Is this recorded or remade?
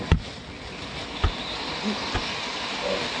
recorded